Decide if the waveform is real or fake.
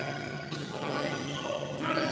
fake